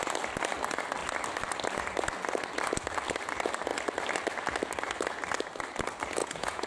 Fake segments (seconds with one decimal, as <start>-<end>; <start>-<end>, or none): 6.2-6.7